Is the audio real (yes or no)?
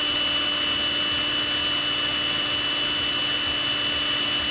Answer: yes